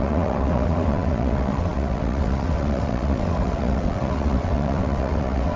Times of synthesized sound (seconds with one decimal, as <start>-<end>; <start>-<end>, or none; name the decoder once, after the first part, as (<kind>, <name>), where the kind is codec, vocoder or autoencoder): 0.0-5.6 (vocoder, WaveNeXt)